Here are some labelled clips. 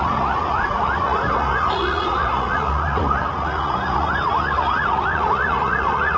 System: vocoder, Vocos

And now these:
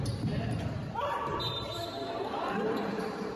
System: vocoder, BigVGAN v2